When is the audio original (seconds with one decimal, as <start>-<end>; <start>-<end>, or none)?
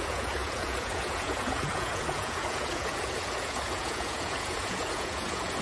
none